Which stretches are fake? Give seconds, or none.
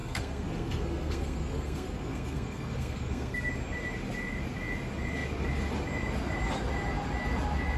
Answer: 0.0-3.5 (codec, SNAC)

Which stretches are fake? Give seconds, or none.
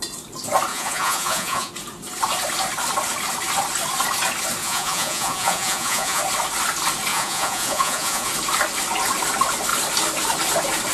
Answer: 0.7-1.7 (vocoder, Vocos); 4.6-6.2; 7.1-8.3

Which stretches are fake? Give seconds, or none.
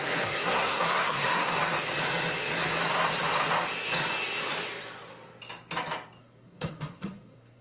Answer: 0.0-1.6 (codec, SNAC); 6.2-7.6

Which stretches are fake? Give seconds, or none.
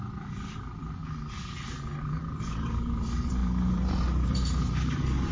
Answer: 0.0-1.0 (vocoder, BigVGAN v2); 2.0-5.3